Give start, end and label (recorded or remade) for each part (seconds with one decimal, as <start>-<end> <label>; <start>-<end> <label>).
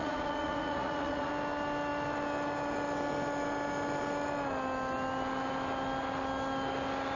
0.0-1.3 remade; 1.3-7.2 recorded